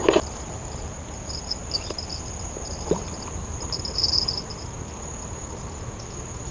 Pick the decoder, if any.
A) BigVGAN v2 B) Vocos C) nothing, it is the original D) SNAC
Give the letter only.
C